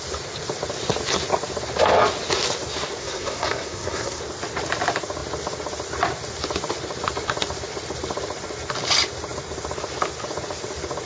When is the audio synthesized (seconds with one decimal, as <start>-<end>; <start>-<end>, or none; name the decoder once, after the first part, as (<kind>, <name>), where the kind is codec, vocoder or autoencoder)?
3.0-4.2 (codec, SNAC)

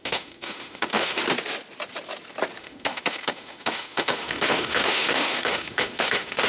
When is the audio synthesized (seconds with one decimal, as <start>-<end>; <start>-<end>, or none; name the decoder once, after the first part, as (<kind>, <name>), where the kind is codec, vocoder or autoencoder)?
0.0-1.2 (autoencoder, DAC-VAE); 2.6-6.5